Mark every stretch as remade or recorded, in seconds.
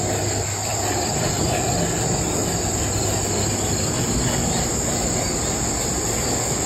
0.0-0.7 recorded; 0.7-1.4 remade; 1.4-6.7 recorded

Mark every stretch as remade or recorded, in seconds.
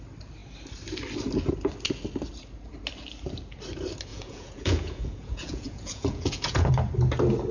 0.0-4.1 recorded; 4.1-6.7 remade; 6.7-7.5 recorded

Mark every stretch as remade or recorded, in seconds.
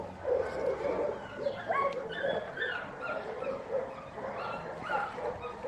0.0-5.7 recorded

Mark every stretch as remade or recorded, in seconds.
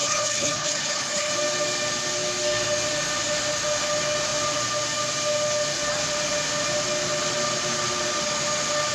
0.0-1.3 remade; 1.3-8.9 recorded